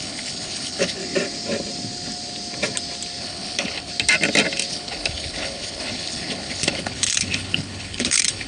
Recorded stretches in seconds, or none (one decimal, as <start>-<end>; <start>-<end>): 1.0-3.2; 3.9-4.7